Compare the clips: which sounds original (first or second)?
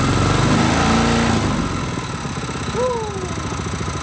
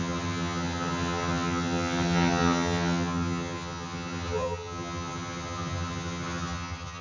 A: first